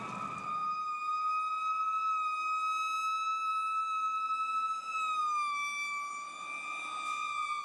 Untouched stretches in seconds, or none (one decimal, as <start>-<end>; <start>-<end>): 0.0-7.6